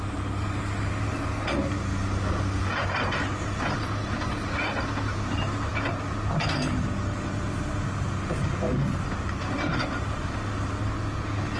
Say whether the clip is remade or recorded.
recorded